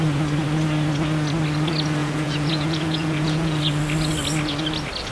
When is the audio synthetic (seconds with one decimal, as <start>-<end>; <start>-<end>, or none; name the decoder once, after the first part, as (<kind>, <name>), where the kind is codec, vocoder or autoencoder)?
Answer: 2.0-3.6 (vocoder, Vocos)